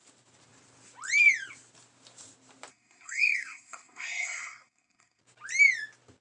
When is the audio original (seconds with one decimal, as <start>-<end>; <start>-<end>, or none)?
0.0-2.7; 5.2-6.2